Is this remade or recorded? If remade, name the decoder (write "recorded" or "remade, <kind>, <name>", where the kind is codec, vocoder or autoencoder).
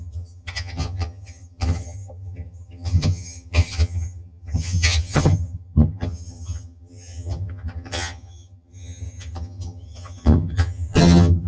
remade, vocoder, HiFi-GAN